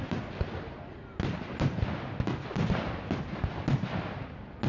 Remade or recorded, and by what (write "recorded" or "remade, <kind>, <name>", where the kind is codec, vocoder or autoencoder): recorded